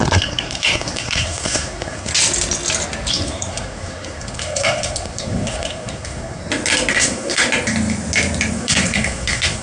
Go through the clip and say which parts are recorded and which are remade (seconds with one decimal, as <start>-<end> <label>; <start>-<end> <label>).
0.0-2.1 remade; 2.1-3.1 recorded; 3.1-6.4 remade; 6.4-6.9 recorded; 6.9-7.4 remade; 7.4-8.5 recorded; 8.5-9.6 remade